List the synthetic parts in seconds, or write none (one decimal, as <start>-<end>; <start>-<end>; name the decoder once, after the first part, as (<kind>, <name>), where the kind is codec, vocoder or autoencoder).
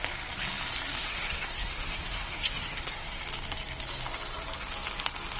1.0-3.2 (codec, SNAC)